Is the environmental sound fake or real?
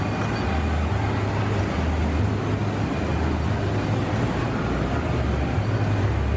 real